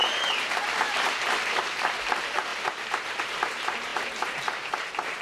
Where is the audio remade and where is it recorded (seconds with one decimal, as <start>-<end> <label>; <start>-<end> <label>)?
0.0-5.2 remade